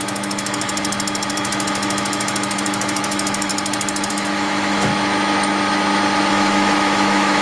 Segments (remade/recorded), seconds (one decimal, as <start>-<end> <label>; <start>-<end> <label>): 0.0-0.7 remade; 0.7-1.3 recorded; 1.3-3.5 remade; 3.5-4.1 recorded; 4.1-4.9 remade; 4.9-6.3 recorded; 6.3-7.4 remade